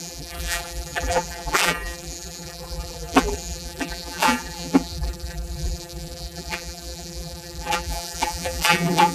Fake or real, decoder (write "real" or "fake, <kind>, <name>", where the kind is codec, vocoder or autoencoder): fake, vocoder, BigVGAN v2